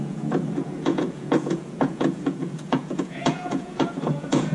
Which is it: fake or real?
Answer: fake